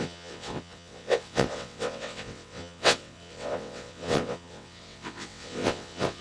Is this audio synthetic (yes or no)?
yes